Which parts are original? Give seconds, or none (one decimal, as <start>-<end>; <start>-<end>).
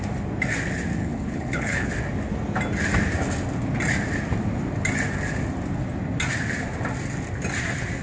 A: 0.0-1.0; 1.9-8.0